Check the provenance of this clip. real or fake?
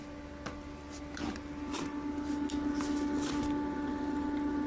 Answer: real